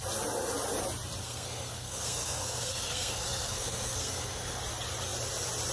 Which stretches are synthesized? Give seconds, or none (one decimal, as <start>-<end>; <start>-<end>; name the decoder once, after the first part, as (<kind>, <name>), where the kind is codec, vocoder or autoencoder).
1.2-4.6 (codec, SNAC)